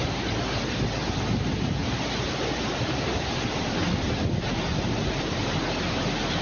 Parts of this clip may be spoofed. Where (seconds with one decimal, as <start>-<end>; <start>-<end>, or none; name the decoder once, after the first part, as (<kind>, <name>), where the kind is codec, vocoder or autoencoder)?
1.8-3.6 (vocoder, BigVGAN v2); 4.7-5.4